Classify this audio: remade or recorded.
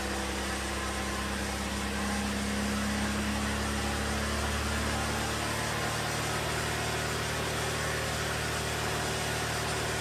recorded